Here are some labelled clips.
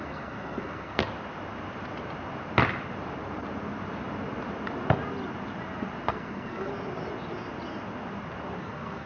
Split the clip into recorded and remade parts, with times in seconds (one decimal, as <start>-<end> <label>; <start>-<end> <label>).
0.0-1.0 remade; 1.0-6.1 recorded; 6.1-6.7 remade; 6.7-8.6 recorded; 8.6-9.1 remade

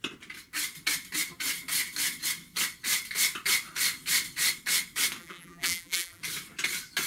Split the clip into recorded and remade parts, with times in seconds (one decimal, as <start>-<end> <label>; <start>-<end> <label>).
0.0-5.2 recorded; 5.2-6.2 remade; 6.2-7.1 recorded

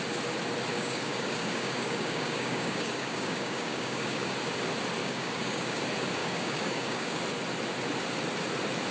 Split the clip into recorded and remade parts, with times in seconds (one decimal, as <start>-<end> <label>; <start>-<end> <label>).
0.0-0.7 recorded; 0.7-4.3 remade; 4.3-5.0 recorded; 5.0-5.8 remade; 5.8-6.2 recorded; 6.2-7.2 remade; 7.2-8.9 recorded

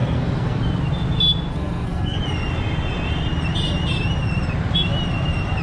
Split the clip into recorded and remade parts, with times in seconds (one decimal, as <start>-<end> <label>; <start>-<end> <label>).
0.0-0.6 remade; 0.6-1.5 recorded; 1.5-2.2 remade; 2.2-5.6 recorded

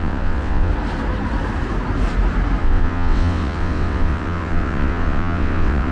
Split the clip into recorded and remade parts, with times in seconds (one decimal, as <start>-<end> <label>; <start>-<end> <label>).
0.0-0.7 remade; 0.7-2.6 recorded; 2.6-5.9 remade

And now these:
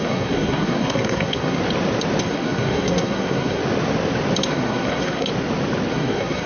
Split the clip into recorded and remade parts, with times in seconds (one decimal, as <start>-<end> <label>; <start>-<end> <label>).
0.0-1.6 remade; 1.6-2.2 recorded; 2.2-3.6 remade; 3.6-4.4 recorded; 4.4-5.3 remade; 5.3-5.9 recorded; 5.9-6.5 remade

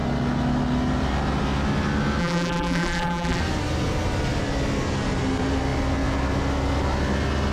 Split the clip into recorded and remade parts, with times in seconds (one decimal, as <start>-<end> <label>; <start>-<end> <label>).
0.0-2.2 recorded; 2.2-3.4 remade; 3.4-7.5 recorded